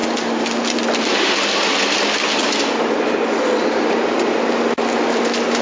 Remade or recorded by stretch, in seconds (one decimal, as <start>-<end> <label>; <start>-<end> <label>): 0.0-5.6 recorded